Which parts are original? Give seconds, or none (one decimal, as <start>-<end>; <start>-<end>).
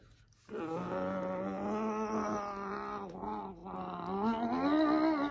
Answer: 0.0-5.3